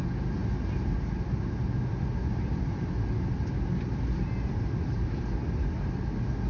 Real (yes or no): yes